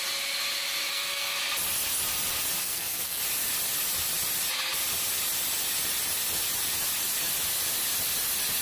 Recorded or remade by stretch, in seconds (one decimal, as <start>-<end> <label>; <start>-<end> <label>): 0.0-0.9 recorded; 0.9-1.4 remade; 1.4-2.6 recorded; 2.6-3.2 remade; 3.2-8.6 recorded